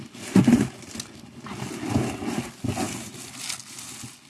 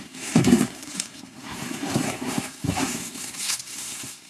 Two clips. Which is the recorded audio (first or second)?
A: first